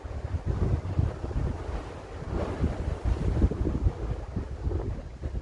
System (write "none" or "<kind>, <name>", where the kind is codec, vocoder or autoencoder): none